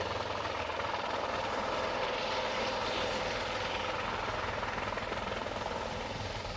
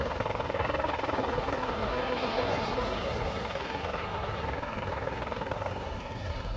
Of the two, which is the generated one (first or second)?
second